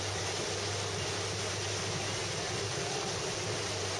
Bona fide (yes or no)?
yes